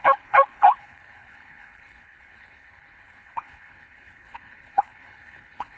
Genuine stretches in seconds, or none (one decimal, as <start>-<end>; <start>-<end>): none